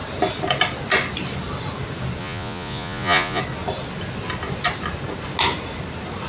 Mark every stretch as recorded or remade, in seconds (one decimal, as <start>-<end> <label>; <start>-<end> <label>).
0.0-2.2 recorded; 2.2-3.4 remade; 3.4-6.3 recorded